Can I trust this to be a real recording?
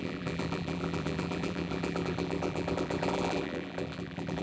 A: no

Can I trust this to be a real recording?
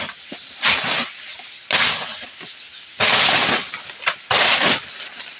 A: yes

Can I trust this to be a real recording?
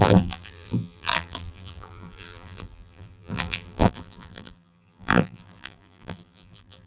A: no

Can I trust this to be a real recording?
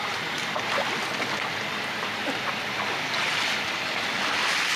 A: yes